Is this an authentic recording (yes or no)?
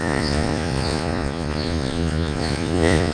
no